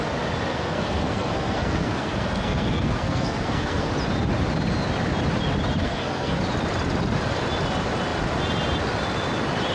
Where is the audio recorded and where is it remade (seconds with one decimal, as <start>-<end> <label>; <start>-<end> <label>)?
0.0-0.5 recorded; 0.5-3.9 remade; 3.9-5.8 recorded; 5.8-6.4 remade; 6.4-9.7 recorded